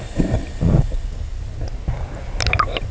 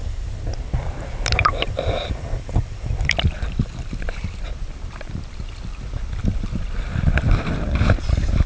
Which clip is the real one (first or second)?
first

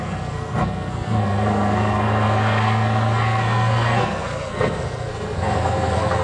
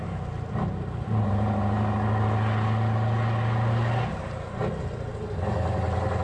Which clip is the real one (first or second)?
second